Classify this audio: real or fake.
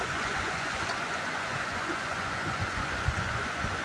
fake